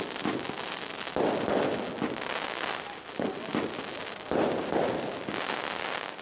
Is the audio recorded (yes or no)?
yes